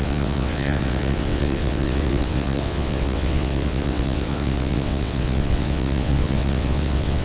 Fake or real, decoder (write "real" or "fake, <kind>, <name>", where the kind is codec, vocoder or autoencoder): fake, vocoder, WaveNeXt